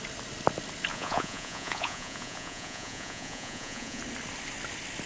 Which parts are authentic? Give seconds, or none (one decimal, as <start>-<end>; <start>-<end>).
0.0-0.9; 4.0-5.1